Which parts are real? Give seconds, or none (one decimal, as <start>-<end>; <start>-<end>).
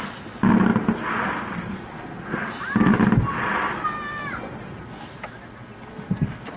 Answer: 0.0-6.6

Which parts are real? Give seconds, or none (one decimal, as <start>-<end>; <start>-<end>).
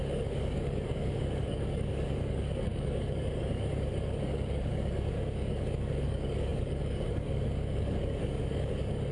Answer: none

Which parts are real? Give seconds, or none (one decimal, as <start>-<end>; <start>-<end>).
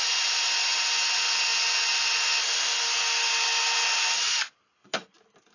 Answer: 0.0-5.5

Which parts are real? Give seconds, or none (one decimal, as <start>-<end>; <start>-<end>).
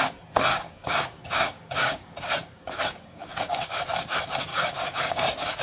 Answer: 0.0-0.5; 3.8-4.5